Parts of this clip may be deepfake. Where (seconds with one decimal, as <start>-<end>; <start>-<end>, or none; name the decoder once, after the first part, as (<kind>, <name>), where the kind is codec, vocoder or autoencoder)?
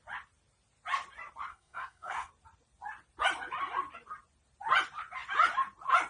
1.5-2.3 (codec, SNAC)